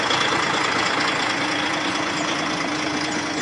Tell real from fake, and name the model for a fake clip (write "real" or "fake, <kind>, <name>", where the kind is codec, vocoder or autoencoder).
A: fake, vocoder, Vocos